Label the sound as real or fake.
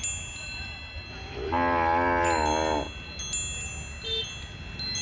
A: real